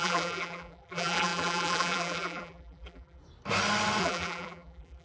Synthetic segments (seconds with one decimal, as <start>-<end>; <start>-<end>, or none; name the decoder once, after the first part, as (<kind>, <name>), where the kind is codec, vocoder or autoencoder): 0.0-3.2 (vocoder, BigVGAN v2); 4.0-5.0